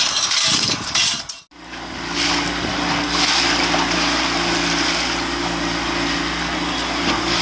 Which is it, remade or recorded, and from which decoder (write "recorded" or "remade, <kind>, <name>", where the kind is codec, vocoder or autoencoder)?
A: recorded